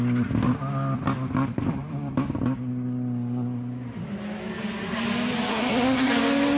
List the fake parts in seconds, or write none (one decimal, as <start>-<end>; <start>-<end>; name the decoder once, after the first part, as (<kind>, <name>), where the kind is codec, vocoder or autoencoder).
5.5-6.1 (codec, SNAC)